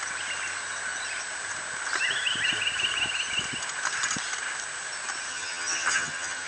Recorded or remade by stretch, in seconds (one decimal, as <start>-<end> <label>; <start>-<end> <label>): 0.0-5.3 recorded; 5.3-6.5 remade